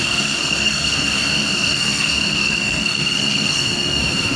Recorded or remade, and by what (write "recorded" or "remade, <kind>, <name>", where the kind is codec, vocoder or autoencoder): remade, codec, SNAC